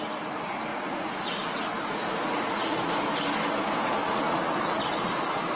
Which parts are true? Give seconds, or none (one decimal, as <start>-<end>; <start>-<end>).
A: 0.0-0.7; 2.9-4.0; 4.8-5.6